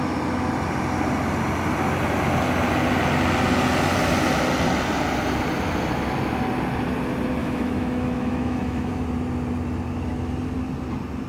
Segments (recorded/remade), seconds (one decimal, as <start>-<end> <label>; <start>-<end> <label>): 0.0-7.4 recorded; 7.4-9.0 remade; 9.0-11.3 recorded